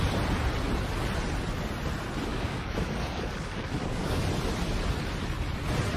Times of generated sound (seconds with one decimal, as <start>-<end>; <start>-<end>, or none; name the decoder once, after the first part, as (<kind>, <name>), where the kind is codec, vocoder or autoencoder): 2.3-4.2 (codec, DAC)